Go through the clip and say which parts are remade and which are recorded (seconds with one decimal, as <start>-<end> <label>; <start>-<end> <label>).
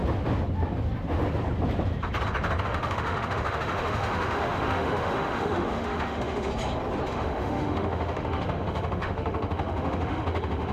0.0-2.6 recorded; 2.6-6.5 remade; 6.5-7.1 recorded; 7.1-10.7 remade